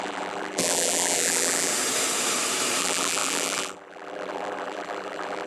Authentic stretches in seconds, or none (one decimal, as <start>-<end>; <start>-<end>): 1.7-2.8